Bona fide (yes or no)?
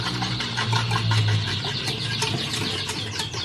yes